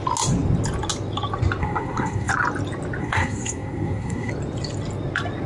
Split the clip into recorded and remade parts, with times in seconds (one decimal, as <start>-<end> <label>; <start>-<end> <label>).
0.0-1.6 recorded; 1.6-2.3 remade; 2.3-3.0 recorded; 3.0-4.3 remade; 4.3-5.5 recorded